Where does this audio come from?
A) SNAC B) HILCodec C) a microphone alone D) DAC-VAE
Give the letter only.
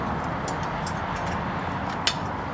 C